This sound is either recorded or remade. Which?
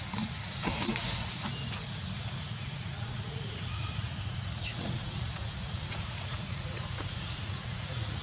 remade